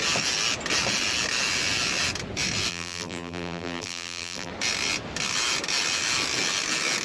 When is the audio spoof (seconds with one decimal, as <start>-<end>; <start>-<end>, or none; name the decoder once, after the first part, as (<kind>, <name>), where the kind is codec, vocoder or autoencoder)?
2.7-4.5 (vocoder, BigVGAN v2)